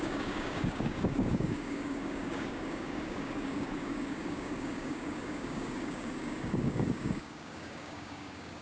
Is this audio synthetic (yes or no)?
yes